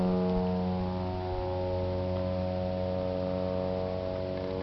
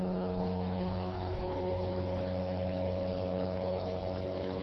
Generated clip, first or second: second